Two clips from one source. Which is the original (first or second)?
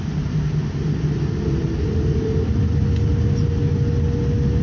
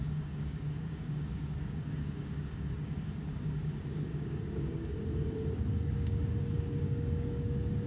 first